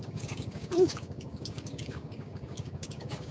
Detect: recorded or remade remade